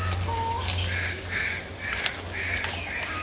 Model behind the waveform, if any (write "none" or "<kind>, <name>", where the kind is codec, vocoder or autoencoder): none